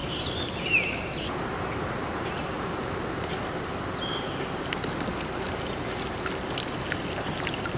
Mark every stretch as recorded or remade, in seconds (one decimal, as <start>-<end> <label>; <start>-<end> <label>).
0.0-3.0 remade; 3.0-7.8 recorded